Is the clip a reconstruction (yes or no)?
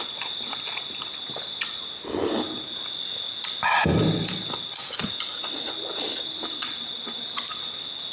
no